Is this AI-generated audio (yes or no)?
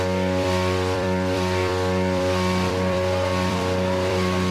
yes